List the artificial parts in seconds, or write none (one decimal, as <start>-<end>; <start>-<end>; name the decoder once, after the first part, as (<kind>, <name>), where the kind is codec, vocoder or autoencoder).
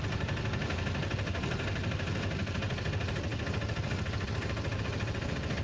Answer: none